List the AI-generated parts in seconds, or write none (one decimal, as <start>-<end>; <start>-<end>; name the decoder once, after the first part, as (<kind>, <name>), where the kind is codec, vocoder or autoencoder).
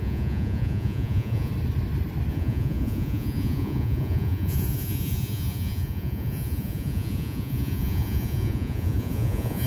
0.0-1.5 (vocoder, Vocos); 2.3-9.7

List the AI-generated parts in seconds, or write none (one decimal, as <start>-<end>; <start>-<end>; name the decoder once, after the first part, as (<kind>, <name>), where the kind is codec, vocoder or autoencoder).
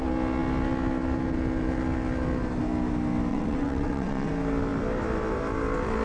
3.3-4.3 (vocoder, WaveNeXt)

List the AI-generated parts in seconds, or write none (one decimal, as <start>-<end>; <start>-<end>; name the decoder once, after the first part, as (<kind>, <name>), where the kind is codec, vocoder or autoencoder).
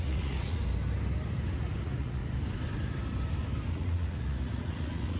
0.0-0.6 (vocoder, Vocos); 1.8-2.2; 3.7-5.2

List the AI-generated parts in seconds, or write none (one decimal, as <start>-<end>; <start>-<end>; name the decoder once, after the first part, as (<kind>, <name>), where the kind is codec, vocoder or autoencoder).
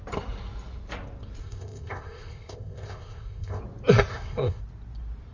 1.4-3.6 (codec, ZipCodec); 4.1-4.6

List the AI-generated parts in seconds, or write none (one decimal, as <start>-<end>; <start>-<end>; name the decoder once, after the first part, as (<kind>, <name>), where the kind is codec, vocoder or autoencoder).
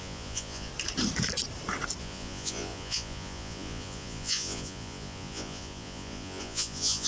0.0-0.7 (vocoder, Vocos); 2.0-7.1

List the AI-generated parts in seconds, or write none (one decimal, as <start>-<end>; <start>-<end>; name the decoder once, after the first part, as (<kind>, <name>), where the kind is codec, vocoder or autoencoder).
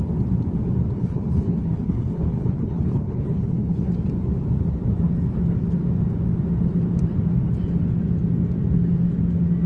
1.0-3.9 (codec, HILCodec)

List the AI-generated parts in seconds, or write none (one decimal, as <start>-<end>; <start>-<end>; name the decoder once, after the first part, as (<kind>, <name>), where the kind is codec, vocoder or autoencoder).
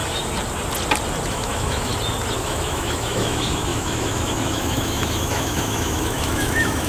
1.3-1.9 (autoencoder, DAC-VAE); 2.4-6.9